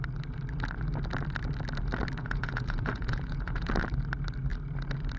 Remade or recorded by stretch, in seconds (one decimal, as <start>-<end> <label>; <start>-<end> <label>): 0.0-2.2 recorded; 2.2-3.7 remade; 3.7-5.2 recorded